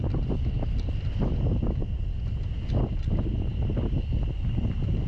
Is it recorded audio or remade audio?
recorded